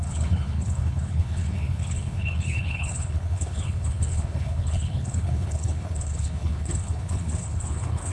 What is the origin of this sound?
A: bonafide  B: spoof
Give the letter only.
B